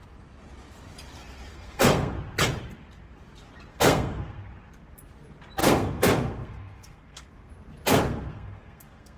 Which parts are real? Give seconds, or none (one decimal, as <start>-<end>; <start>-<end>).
0.0-1.5; 2.1-3.7; 4.4-5.6; 7.5-7.9